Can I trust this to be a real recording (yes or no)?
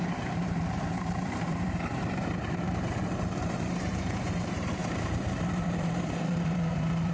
no